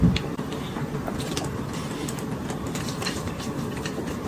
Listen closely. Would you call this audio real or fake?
fake